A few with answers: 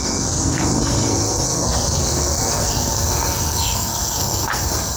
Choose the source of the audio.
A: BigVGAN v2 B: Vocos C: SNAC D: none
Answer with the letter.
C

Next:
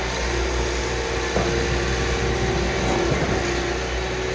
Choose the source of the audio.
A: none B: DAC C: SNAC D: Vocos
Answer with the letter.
A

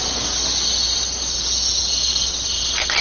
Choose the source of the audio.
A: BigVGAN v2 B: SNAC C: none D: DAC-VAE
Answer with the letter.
C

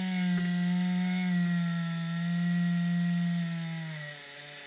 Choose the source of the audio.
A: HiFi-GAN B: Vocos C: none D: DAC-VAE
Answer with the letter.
C